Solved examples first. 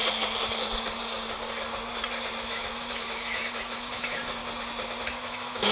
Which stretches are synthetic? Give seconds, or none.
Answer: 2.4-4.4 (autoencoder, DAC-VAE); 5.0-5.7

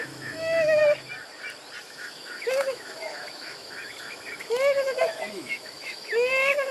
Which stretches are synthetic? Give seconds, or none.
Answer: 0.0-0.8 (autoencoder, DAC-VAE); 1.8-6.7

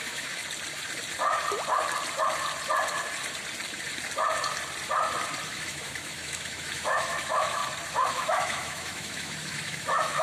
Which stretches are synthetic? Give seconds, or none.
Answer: 0.0-0.4 (autoencoder, DAC-VAE); 5.5-7.6; 8.1-10.2

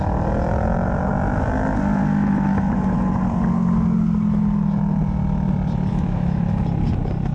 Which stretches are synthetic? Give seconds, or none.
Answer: 2.0-2.7 (autoencoder, DAC-VAE); 5.9-6.5

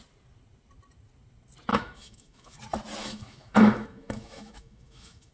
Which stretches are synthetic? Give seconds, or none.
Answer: 1.7-2.6 (autoencoder, DAC-VAE); 3.0-5.3

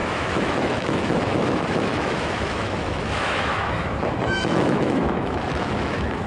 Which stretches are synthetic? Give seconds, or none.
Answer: 0.0-6.3 (autoencoder, DAC-VAE)

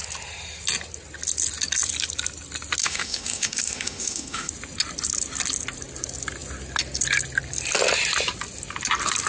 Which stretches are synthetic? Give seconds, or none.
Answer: 2.8-4.5 (autoencoder, DAC-VAE)